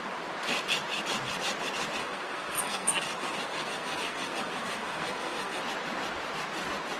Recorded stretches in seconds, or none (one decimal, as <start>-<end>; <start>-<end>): 0.0-2.0; 5.6-7.0